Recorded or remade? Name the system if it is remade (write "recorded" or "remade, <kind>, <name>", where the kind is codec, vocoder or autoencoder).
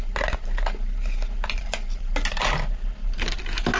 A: recorded